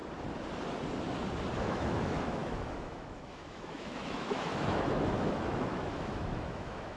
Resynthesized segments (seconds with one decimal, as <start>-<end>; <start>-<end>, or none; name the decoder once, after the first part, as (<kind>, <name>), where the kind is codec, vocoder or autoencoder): 1.6-7.0 (autoencoder, DAC-VAE)